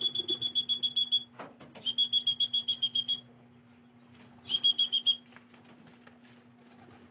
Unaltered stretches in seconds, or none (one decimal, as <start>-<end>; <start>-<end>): 0.0-7.1